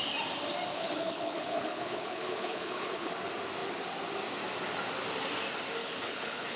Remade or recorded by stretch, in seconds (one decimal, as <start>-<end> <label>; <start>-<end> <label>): 0.0-0.7 recorded; 0.7-3.1 remade; 3.1-5.8 recorded; 5.8-6.6 remade